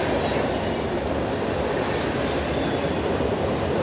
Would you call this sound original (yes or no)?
yes